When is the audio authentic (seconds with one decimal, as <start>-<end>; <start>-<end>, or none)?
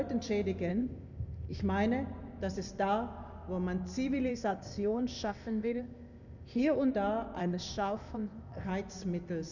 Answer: 0.0-0.7; 1.6-4.3; 6.9-7.4; 8.7-9.5